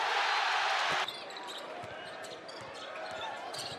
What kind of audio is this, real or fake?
real